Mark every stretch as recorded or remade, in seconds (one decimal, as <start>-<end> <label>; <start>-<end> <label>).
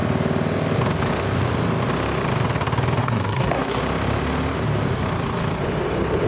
0.0-3.0 recorded; 3.0-3.8 remade; 3.8-6.3 recorded